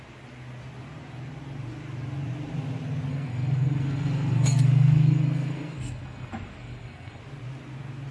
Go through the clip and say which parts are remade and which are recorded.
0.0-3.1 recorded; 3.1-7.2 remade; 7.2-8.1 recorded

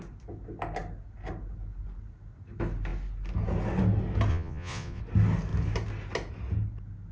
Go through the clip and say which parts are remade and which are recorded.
0.0-4.3 recorded; 4.3-5.0 remade; 5.0-7.1 recorded

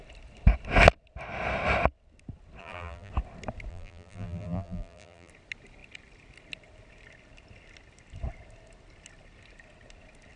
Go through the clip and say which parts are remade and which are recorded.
0.0-2.6 recorded; 2.6-3.1 remade; 3.1-3.7 recorded; 3.7-5.3 remade; 5.3-10.4 recorded

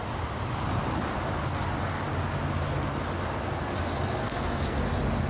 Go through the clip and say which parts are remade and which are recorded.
0.0-4.2 recorded; 4.2-4.8 remade; 4.8-5.3 recorded

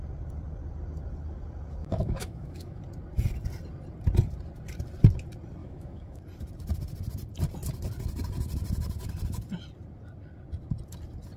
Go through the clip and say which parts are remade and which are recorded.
0.0-1.8 recorded; 1.8-2.8 remade; 2.8-5.6 recorded; 5.6-6.2 remade; 6.2-11.4 recorded

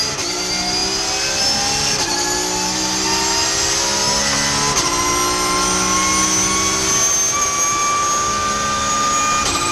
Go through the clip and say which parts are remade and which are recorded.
0.0-9.7 recorded

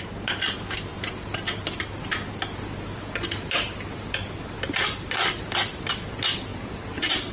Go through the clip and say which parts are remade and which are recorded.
0.0-7.3 recorded

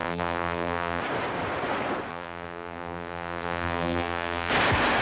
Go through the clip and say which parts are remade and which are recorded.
0.0-1.0 remade; 1.0-2.1 recorded; 2.1-4.5 remade; 4.5-5.0 recorded